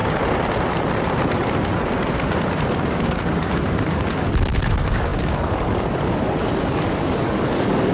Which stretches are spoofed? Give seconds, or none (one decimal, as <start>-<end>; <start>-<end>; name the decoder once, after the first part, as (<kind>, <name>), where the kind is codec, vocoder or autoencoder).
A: 2.9-7.9 (codec, DAC)